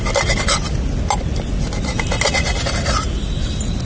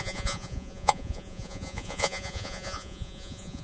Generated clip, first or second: second